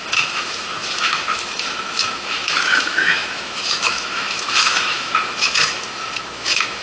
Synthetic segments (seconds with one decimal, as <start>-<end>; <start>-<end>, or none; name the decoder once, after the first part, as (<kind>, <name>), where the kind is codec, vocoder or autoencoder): 0.0-6.8 (autoencoder, DAC-VAE)